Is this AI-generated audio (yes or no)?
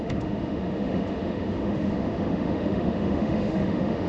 yes